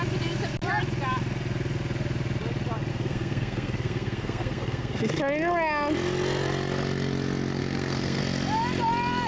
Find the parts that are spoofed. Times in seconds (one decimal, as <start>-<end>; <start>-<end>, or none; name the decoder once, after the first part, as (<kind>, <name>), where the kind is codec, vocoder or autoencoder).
2.9-5.2 (codec, SNAC); 7.6-8.2